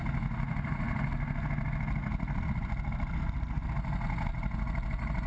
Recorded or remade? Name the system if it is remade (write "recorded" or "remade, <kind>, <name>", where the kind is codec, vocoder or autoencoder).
recorded